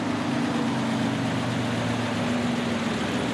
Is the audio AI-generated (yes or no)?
no